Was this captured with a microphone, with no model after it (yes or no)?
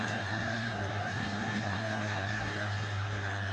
no